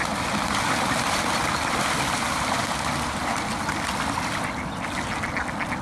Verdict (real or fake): real